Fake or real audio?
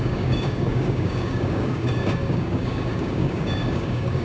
fake